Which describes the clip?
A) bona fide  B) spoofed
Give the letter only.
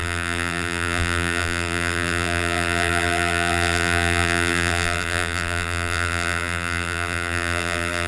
B